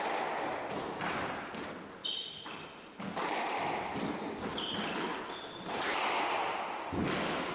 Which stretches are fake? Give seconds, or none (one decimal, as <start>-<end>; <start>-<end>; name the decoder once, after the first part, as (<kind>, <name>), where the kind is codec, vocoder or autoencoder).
none